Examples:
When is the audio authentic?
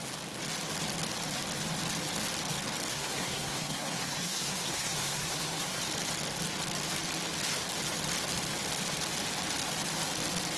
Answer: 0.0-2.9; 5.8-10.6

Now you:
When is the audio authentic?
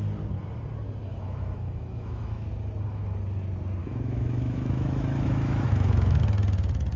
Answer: 0.0-1.1; 2.5-3.8; 6.2-7.0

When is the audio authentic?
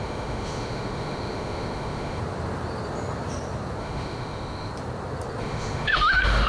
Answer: 2.2-3.8; 4.7-5.4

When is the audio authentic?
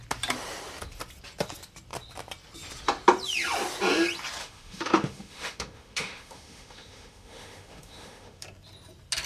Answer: 0.0-4.4; 8.4-9.3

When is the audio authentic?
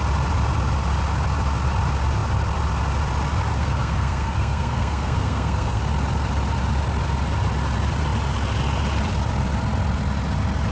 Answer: 0.0-3.5; 5.8-10.7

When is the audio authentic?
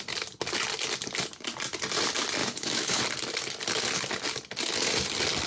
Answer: 0.0-2.4; 3.0-5.5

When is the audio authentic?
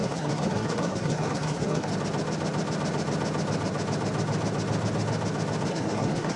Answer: 1.9-5.7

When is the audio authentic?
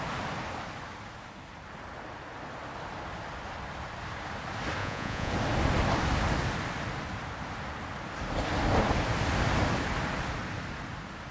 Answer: 0.0-4.8; 5.3-11.3